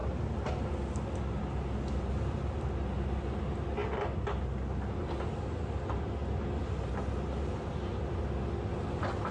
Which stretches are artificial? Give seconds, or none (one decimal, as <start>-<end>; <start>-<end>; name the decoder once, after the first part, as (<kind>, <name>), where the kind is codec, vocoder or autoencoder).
none